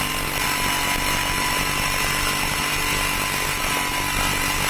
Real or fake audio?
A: real